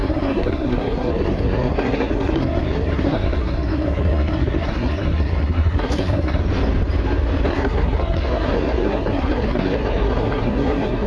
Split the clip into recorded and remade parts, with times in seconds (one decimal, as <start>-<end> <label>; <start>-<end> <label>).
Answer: 0.0-6.4 remade; 6.4-7.5 recorded; 7.5-11.1 remade